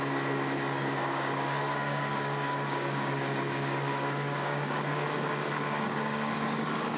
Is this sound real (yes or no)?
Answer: no